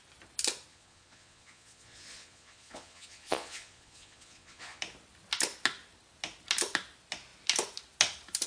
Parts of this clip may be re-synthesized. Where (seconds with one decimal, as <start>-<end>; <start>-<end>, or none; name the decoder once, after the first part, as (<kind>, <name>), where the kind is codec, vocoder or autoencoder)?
0.7-4.8 (vocoder, Vocos)